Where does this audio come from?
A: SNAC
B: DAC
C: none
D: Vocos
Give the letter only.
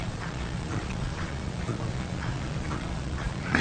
D